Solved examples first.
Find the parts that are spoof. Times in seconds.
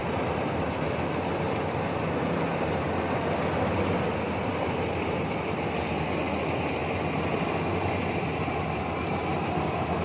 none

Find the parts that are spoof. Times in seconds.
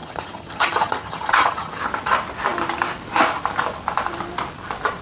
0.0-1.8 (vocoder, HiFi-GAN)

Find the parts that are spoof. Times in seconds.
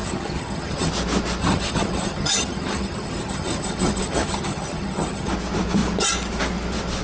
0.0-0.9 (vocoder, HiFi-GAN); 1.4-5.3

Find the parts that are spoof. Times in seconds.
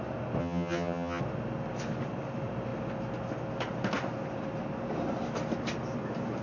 0.4-1.2 (vocoder, HiFi-GAN)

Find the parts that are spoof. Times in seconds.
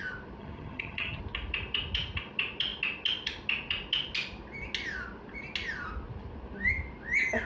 0.4-1.2 (vocoder, HiFi-GAN)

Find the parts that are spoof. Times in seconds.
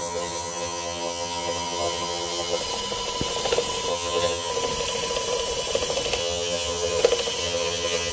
0.0-2.6 (vocoder, HiFi-GAN); 3.9-4.5; 6.2-7.0; 7.4-8.1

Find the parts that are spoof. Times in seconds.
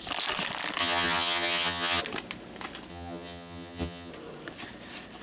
0.8-2.0 (vocoder, HiFi-GAN); 2.9-4.1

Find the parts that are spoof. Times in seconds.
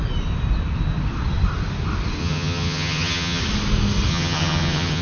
2.2-3.4 (vocoder, HiFi-GAN); 4.1-5.0